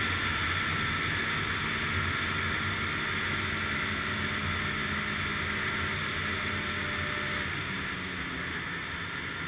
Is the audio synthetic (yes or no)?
no